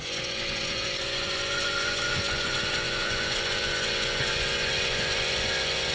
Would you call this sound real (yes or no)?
no